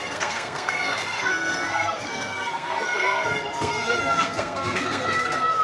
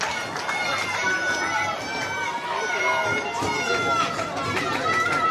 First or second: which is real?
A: second